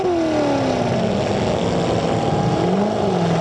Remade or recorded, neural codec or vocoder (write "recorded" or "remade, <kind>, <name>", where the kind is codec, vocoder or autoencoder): recorded